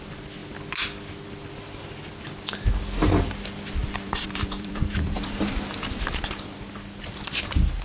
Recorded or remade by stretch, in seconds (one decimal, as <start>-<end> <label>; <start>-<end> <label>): 0.0-3.8 recorded; 3.8-5.2 remade; 5.2-7.8 recorded